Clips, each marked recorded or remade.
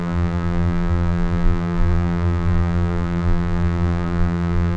remade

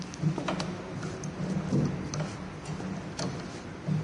recorded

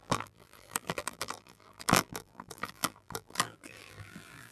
remade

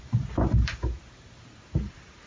remade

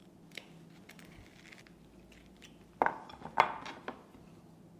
recorded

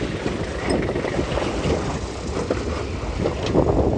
recorded